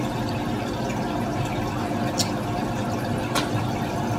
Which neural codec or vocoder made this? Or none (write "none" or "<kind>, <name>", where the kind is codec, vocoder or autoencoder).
none